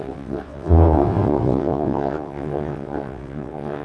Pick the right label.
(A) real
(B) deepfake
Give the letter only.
B